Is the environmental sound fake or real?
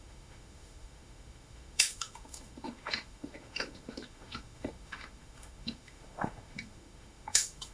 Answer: fake